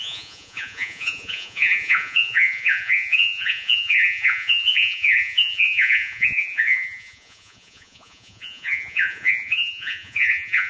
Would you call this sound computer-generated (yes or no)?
yes